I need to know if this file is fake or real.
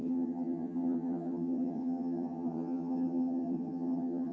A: fake